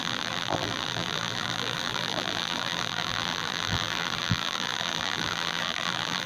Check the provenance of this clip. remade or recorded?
remade